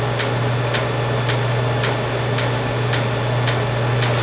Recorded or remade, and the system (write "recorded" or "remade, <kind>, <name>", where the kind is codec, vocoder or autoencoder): recorded